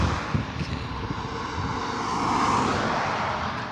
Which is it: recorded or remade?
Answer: recorded